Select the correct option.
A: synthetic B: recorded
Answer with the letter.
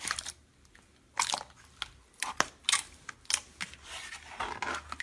B